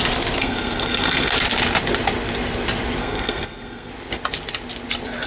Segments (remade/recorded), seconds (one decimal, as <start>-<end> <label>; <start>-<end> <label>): 0.0-0.4 recorded; 0.4-1.3 remade; 1.3-3.0 recorded; 3.0-3.9 remade; 3.9-5.3 recorded